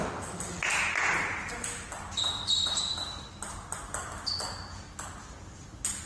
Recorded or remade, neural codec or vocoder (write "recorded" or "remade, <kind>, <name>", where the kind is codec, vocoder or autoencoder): recorded